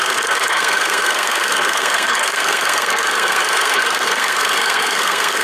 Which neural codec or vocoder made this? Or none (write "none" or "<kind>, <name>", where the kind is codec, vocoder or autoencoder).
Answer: codec, SNAC